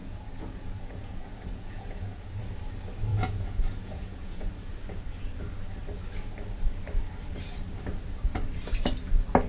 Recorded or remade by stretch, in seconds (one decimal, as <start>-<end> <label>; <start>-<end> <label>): 0.0-2.4 remade; 2.4-3.1 recorded; 3.1-4.5 remade; 4.5-9.5 recorded